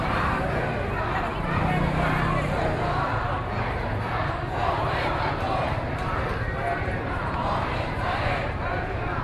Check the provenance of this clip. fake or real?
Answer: fake